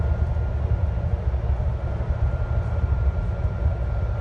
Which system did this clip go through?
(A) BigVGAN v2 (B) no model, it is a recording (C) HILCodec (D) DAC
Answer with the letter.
B